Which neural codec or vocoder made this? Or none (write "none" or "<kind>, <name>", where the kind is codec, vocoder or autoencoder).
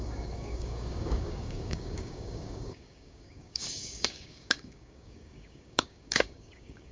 codec, DAC